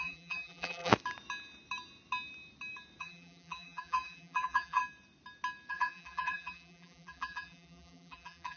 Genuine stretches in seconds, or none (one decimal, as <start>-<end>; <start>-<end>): 0.9-3.0; 4.8-5.7